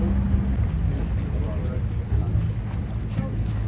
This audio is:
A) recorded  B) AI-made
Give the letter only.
A